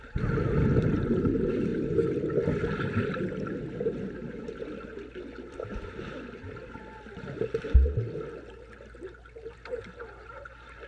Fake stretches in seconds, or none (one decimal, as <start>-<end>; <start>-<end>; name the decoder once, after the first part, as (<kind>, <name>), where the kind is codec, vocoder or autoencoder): 1.7-2.2 (vocoder, BigVGAN v2)